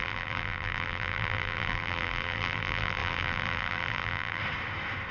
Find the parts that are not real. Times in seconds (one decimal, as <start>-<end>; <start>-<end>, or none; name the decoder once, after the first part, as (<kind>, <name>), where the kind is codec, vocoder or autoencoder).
0.0-4.4 (vocoder, BigVGAN v2)